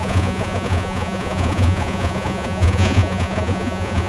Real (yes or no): no